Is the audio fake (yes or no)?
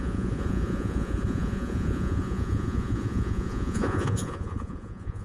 yes